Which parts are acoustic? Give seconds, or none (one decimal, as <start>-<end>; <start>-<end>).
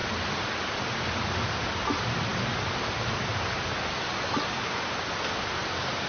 0.0-6.1